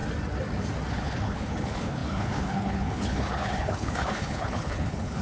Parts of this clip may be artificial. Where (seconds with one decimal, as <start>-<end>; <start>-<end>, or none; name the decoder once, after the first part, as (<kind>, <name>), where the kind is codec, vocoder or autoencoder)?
0.9-5.2 (codec, HILCodec)